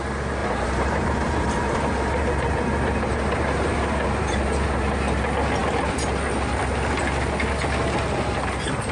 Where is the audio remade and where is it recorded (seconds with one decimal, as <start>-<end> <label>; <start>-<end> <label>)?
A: 0.0-0.4 recorded; 0.4-4.4 remade; 4.4-8.9 recorded